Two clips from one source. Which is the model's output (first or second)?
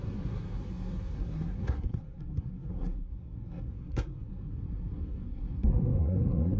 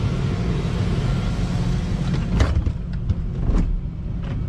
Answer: first